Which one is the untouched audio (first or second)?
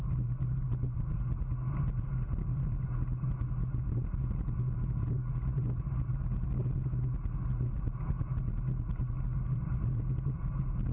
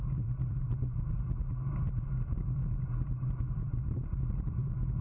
first